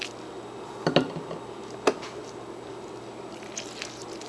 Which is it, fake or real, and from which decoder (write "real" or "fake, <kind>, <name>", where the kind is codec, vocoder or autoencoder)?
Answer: real